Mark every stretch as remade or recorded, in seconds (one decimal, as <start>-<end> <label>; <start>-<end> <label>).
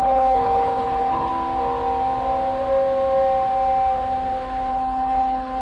0.0-1.3 remade; 1.3-4.7 recorded; 4.7-5.6 remade